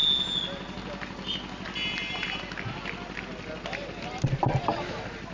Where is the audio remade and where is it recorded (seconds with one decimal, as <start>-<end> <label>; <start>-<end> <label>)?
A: 0.0-5.3 recorded